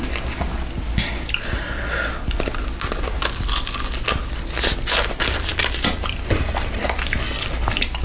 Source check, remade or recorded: recorded